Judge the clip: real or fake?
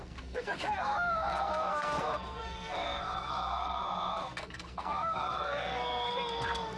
fake